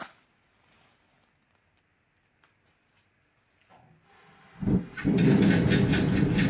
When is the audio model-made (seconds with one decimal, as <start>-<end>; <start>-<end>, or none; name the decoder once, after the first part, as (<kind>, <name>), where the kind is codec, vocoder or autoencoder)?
none